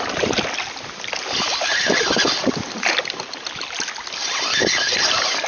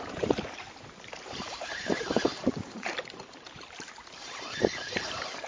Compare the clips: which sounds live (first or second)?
first